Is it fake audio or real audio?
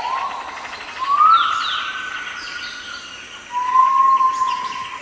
real